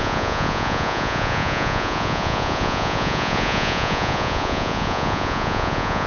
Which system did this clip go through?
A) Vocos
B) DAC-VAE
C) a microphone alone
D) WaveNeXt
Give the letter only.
A